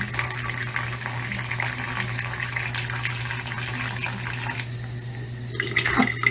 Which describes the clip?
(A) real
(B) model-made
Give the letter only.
A